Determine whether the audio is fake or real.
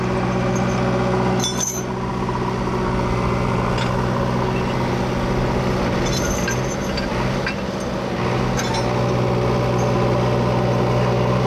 real